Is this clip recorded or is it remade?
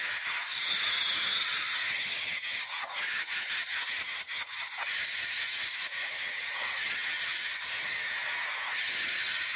remade